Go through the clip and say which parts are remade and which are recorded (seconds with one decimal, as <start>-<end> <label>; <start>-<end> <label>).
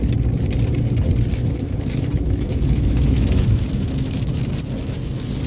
0.0-1.3 recorded; 1.3-4.4 remade; 4.4-5.5 recorded